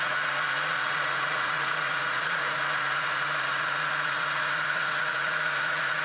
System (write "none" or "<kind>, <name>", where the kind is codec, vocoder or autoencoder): vocoder, Vocos